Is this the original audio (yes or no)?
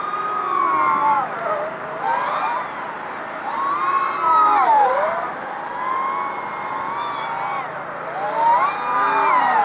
yes